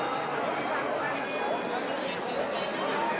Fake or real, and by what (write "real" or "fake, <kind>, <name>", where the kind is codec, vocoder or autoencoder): real